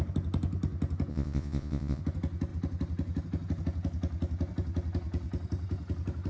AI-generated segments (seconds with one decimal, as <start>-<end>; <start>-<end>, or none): 1.1-2.0